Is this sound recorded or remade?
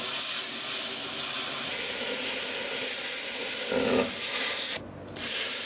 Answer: recorded